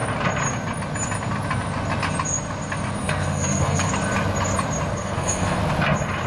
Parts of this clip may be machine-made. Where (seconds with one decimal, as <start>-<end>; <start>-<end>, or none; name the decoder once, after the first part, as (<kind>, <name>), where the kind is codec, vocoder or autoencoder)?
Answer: 3.0-3.9 (codec, SNAC); 4.9-5.6